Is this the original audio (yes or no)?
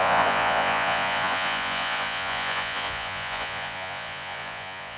no